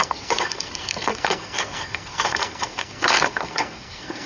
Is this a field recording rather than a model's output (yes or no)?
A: no